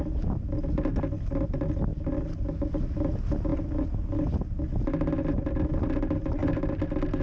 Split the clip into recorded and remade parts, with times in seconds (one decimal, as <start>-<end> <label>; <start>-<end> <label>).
0.0-7.2 recorded